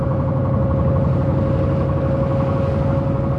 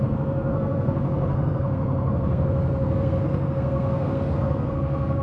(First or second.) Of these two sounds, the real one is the first